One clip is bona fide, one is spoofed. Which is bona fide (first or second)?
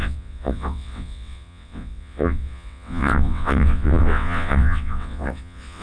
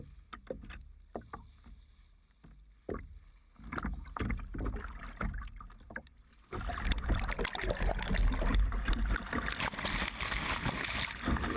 second